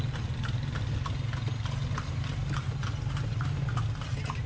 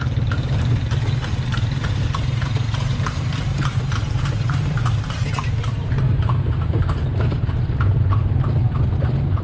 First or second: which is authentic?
first